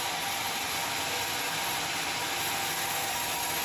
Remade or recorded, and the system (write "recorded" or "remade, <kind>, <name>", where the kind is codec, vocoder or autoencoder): recorded